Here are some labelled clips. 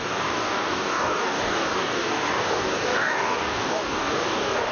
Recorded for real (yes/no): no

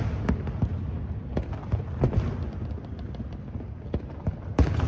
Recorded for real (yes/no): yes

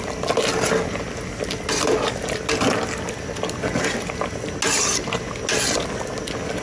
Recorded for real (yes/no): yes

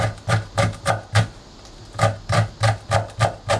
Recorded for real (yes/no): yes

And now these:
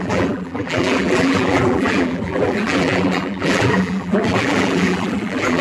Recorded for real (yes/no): no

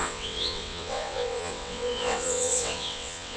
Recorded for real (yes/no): no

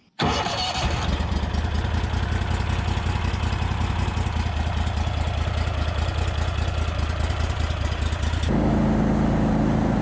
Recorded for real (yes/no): yes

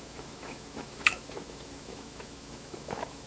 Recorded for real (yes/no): no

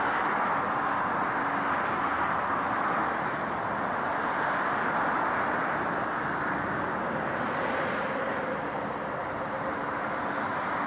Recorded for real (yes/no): yes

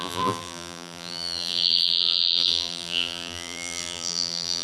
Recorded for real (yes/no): no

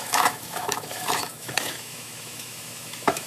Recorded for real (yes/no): no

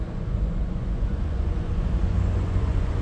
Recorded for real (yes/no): no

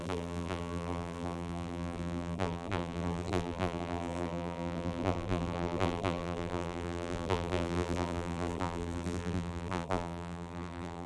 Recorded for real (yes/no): no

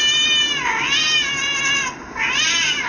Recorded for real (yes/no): no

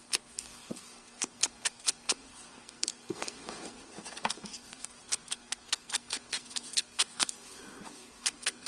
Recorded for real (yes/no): no